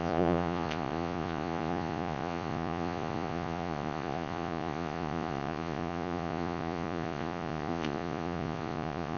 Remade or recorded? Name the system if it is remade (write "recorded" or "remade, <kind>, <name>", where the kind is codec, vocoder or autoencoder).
remade, vocoder, Vocos